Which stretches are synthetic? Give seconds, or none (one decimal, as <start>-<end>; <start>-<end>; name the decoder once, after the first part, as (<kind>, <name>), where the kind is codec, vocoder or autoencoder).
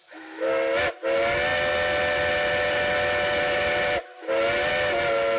none